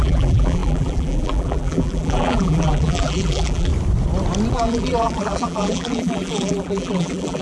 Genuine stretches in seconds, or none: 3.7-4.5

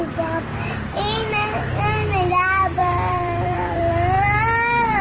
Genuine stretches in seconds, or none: 0.0-2.8; 3.8-5.0

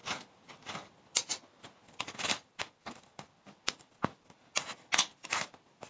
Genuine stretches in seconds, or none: 0.0-5.9

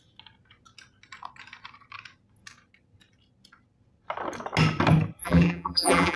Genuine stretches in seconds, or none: 0.0-5.2

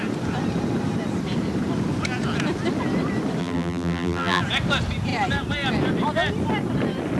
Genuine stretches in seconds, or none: 0.0-3.4; 4.4-7.2

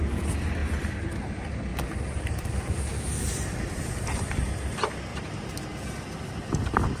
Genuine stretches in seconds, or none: 0.0-1.7; 4.4-5.1; 5.6-7.0

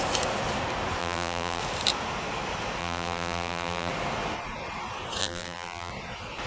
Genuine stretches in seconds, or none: 0.0-1.0; 1.6-2.8; 3.9-5.2; 5.9-6.5

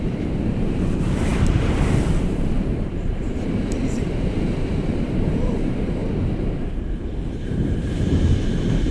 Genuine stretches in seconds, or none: 6.0-7.3